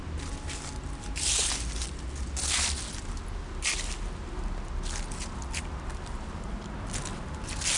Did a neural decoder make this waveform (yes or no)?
no